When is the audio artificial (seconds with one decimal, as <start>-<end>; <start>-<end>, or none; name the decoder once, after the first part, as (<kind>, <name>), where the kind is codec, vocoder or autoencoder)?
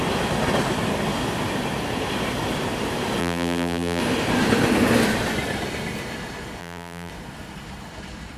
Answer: 3.2-4.0 (vocoder, BigVGAN v2); 6.6-7.1